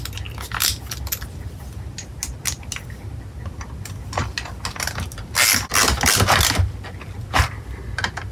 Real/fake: real